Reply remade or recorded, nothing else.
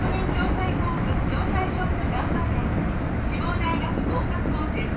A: recorded